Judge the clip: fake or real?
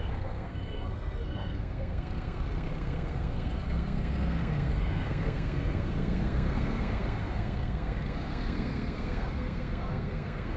fake